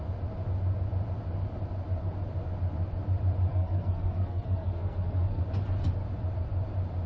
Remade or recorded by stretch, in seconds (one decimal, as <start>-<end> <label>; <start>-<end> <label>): 0.0-3.5 recorded; 3.5-5.4 remade; 5.4-7.1 recorded